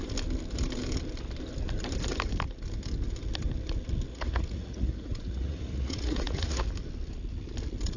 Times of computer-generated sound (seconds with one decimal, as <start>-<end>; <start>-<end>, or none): 4.1-6.6